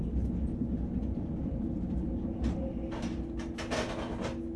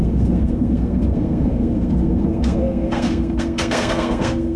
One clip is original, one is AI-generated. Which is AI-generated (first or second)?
second